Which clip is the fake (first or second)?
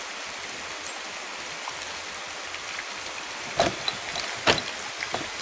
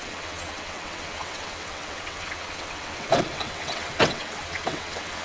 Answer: second